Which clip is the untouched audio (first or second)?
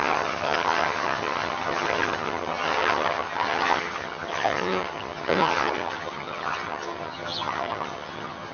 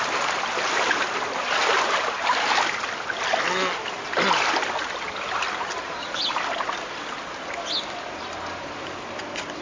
second